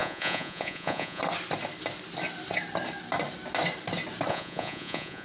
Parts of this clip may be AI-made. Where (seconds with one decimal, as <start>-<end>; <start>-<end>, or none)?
0.0-1.2; 4.3-5.2